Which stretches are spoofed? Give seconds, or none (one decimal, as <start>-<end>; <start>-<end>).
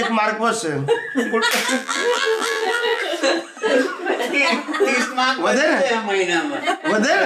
1.7-3.0